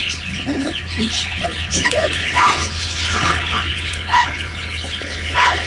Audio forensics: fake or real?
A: fake